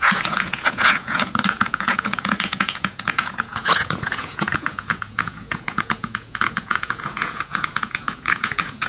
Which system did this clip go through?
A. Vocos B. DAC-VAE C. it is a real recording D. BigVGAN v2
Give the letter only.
A